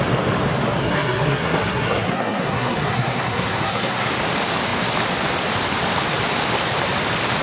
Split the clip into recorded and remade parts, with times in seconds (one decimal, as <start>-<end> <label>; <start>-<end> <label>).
0.0-0.8 recorded; 0.8-4.1 remade; 4.1-7.4 recorded